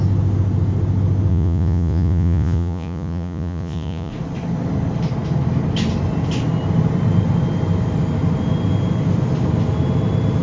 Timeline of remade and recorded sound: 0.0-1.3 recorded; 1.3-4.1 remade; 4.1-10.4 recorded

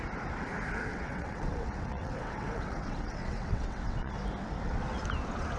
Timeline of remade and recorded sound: 0.0-0.9 recorded; 0.9-4.1 remade; 4.1-5.6 recorded

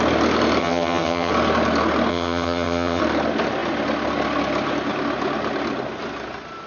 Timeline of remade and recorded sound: 0.0-0.6 recorded; 0.6-1.3 remade; 1.3-2.1 recorded; 2.1-3.0 remade; 3.0-6.7 recorded

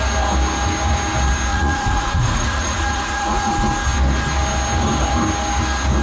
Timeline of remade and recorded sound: 0.0-1.5 recorded; 1.5-3.5 remade; 3.5-6.0 recorded

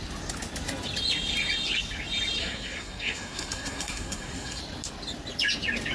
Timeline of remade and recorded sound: 0.0-2.4 recorded; 2.4-4.6 remade; 4.6-5.9 recorded